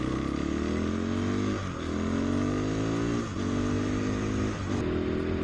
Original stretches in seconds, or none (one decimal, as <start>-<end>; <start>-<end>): 0.0-5.4